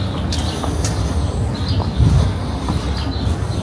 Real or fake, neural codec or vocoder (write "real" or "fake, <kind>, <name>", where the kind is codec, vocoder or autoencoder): real